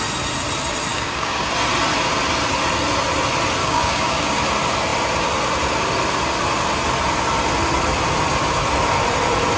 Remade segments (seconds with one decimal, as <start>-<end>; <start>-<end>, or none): 0.9-1.5; 3.6-4.4